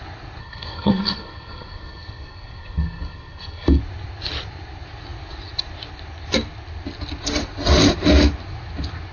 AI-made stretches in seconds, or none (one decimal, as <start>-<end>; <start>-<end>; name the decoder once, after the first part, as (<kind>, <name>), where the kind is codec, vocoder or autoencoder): 0.4-3.8 (codec, SNAC)